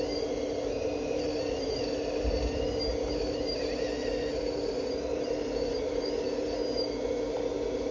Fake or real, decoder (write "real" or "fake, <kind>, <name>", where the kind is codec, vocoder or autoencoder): real